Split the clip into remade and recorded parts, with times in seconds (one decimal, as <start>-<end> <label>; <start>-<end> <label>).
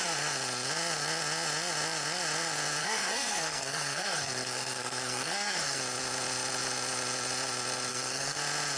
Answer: 0.0-2.8 recorded; 2.8-5.8 remade; 5.8-7.9 recorded; 7.9-8.4 remade; 8.4-8.8 recorded